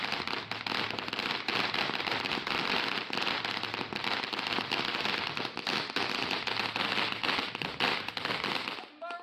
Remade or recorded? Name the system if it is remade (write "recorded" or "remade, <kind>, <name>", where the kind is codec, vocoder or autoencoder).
recorded